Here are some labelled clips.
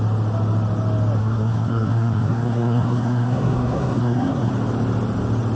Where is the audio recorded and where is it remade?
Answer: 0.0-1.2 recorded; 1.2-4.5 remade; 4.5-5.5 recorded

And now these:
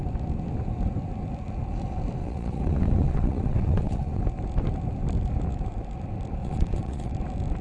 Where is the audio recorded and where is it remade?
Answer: 0.0-2.2 recorded; 2.2-4.2 remade; 4.2-6.4 recorded; 6.4-7.1 remade; 7.1-7.6 recorded

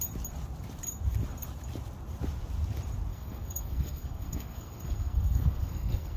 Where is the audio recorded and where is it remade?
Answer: 0.0-3.1 recorded; 3.1-6.2 remade

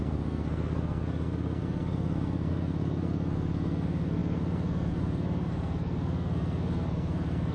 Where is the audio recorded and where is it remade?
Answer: 0.0-7.5 remade